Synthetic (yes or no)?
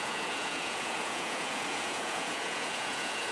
yes